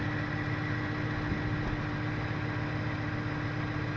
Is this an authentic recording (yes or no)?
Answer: yes